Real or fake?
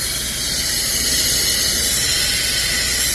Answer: real